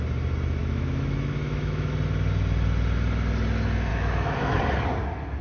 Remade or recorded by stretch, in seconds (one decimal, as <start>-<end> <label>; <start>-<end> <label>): 0.0-0.6 recorded; 0.6-1.9 remade; 1.9-3.9 recorded; 3.9-4.6 remade; 4.6-5.4 recorded